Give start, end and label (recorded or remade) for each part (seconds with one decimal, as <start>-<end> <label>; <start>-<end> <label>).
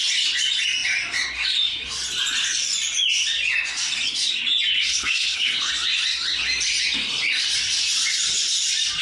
0.0-4.7 recorded; 4.7-5.7 remade; 5.7-9.0 recorded